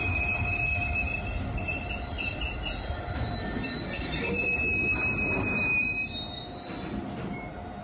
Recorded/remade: recorded